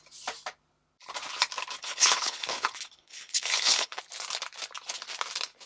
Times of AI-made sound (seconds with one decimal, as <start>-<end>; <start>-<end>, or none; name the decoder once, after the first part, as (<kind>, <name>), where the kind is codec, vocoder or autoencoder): 1.8-4.0 (codec, HILCodec)